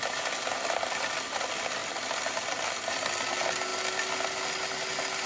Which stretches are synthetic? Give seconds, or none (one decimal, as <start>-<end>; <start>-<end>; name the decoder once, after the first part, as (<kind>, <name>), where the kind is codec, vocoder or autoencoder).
none